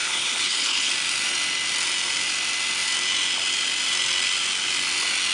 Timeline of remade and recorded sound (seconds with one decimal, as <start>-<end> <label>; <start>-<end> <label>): 0.0-0.9 remade; 0.9-5.3 recorded